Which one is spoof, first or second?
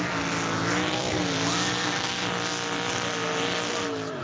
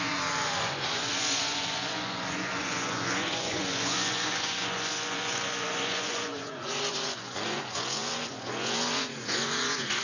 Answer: second